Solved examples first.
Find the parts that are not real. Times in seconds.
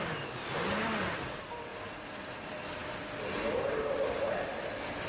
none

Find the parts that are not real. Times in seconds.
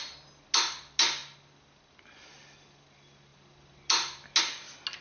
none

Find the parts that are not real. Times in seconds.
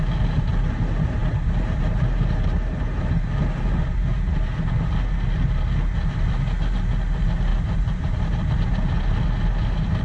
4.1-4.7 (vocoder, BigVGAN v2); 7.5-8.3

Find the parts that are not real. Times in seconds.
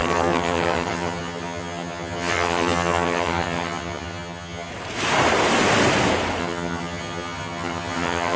0.0-4.7 (vocoder, HiFi-GAN); 6.4-8.4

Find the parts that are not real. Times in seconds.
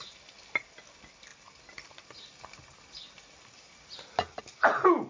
none